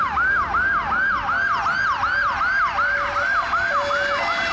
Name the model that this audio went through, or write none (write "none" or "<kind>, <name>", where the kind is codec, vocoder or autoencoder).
none